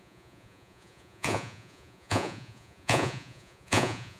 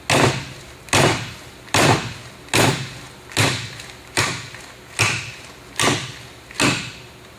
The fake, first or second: first